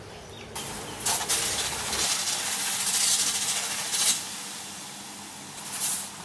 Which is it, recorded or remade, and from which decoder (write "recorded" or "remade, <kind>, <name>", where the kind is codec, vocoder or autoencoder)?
recorded